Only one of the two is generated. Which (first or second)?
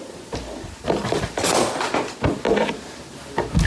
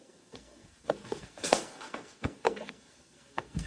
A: second